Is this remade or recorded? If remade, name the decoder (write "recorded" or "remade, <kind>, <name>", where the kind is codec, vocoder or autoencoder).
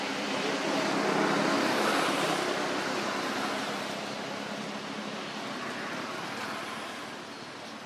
recorded